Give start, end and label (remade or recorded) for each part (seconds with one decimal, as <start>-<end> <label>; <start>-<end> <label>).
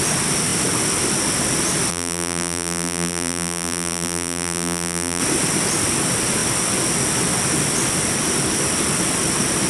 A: 0.0-1.9 recorded; 1.9-5.2 remade; 5.2-9.7 recorded